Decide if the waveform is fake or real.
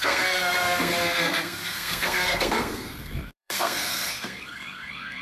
fake